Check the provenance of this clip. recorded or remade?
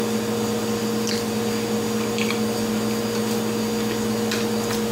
recorded